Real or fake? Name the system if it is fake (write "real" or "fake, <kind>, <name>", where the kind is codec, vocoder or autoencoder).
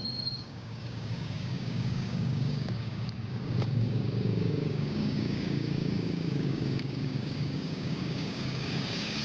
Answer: fake, codec, DAC